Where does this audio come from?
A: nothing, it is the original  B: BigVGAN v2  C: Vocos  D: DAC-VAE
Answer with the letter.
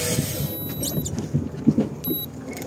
A